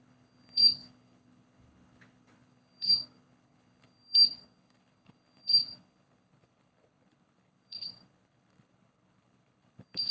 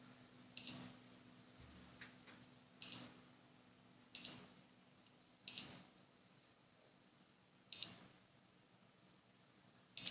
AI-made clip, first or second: first